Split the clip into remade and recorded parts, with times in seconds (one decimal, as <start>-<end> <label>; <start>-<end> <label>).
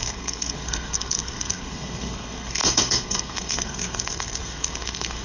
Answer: 0.0-5.2 remade